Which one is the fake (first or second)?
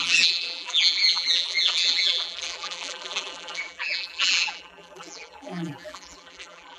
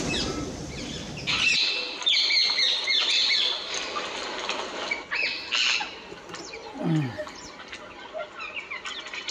first